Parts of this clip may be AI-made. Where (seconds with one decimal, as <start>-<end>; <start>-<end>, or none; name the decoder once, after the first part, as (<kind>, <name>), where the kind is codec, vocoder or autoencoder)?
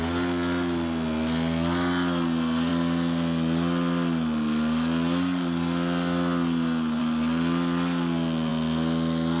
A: none